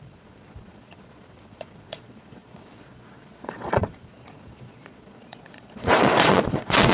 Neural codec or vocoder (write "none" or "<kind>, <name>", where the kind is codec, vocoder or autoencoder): vocoder, Vocos